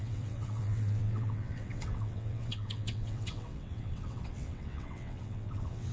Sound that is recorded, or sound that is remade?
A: remade